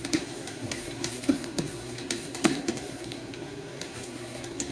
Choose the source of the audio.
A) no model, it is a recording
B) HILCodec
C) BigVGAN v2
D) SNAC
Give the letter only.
D